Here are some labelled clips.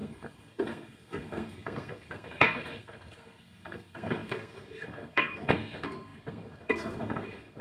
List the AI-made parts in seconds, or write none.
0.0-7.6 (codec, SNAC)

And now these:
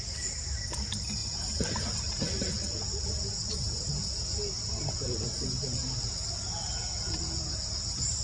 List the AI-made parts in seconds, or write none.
1.2-2.5 (vocoder, BigVGAN v2); 3.4-3.9

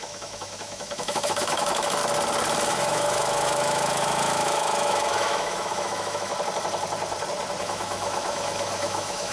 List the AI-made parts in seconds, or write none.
0.0-2.0 (autoencoder, DAC-VAE); 2.7-6.3; 7.6-9.3

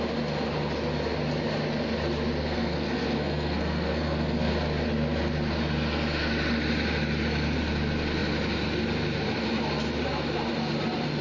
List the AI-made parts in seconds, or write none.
2.4-4.5 (codec, SNAC)

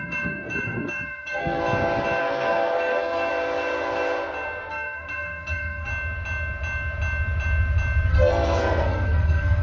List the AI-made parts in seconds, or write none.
0.0-1.6 (codec, SNAC); 2.2-3.3; 4.7-5.9; 8.1-9.6